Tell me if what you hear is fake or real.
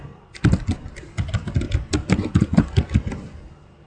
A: fake